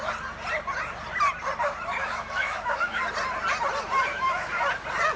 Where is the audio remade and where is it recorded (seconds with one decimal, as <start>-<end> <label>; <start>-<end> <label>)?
0.0-2.0 recorded; 2.0-3.0 remade; 3.0-4.1 recorded; 4.1-4.6 remade; 4.6-5.2 recorded